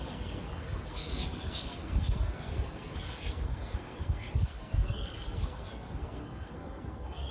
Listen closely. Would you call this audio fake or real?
fake